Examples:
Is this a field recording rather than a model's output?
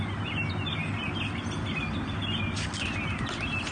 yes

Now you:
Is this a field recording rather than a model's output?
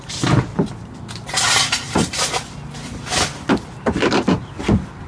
yes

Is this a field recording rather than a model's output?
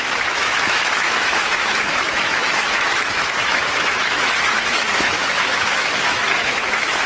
no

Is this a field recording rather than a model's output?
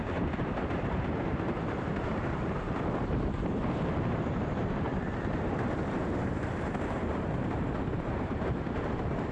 no